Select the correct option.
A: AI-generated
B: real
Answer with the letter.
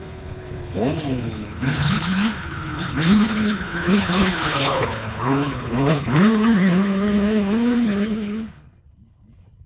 A